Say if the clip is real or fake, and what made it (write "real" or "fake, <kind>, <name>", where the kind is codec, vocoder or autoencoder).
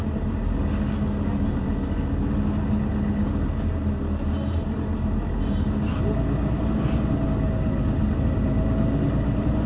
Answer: real